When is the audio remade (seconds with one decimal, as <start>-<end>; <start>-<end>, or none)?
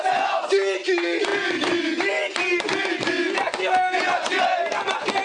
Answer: none